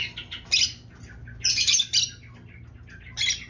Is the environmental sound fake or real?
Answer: real